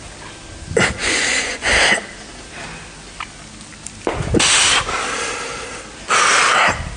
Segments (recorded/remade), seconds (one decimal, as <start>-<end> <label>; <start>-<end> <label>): 0.0-1.0 recorded; 1.0-1.7 remade; 1.7-7.0 recorded